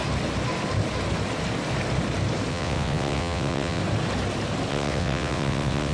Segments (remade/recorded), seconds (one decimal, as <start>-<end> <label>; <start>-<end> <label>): 0.0-2.5 recorded; 2.5-3.8 remade; 3.8-4.7 recorded; 4.7-5.9 remade